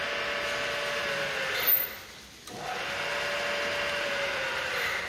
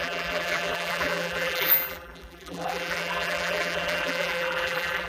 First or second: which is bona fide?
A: first